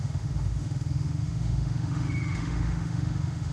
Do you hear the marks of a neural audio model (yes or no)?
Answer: yes